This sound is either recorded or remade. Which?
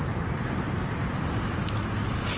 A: recorded